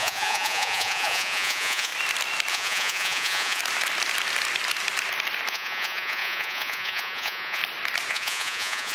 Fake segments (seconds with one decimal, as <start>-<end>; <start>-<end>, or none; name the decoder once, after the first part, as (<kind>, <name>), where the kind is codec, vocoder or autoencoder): 0.0-1.9 (vocoder, Vocos); 2.5-3.6; 5.5-7.6; 8.1-8.9